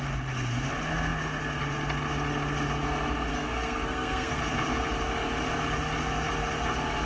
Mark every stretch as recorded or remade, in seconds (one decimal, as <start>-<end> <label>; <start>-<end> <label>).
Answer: 0.0-3.3 recorded; 3.3-4.4 remade; 4.4-7.0 recorded